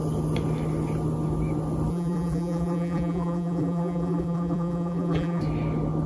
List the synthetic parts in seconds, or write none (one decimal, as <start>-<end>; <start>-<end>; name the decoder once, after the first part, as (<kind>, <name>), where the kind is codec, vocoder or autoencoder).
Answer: 1.9-5.4 (vocoder, BigVGAN v2)